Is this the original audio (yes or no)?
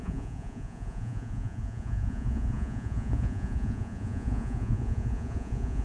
no